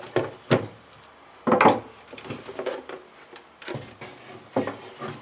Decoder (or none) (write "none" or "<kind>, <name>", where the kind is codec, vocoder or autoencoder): none